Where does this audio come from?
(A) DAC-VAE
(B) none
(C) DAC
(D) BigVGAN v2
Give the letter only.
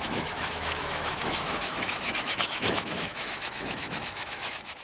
A